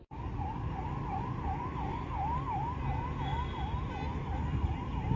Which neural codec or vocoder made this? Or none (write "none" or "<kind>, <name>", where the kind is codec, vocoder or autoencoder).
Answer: none